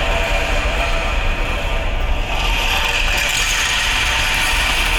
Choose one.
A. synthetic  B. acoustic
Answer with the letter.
A